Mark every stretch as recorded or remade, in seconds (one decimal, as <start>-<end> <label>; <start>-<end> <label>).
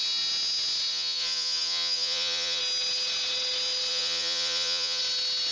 0.0-0.9 recorded; 0.9-2.6 remade; 2.6-3.9 recorded; 3.9-5.0 remade; 5.0-5.5 recorded